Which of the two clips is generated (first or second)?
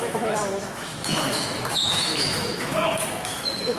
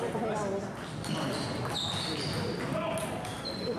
first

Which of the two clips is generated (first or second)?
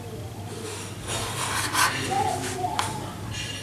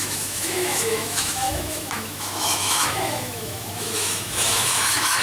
second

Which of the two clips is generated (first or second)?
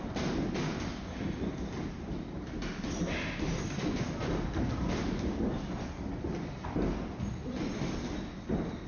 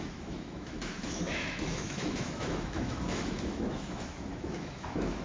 second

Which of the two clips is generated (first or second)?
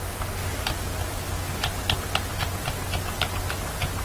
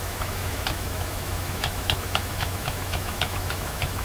second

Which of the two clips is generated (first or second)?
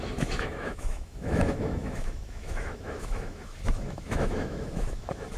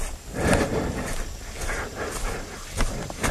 first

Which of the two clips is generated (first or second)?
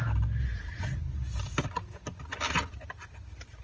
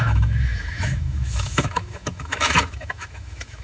second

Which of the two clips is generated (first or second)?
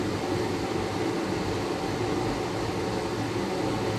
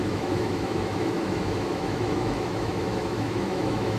second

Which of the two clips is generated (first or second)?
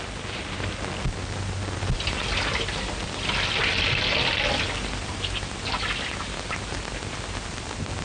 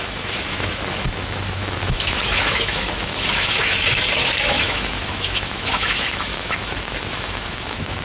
second